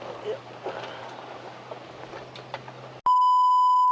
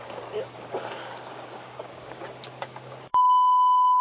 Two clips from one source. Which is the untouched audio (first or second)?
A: first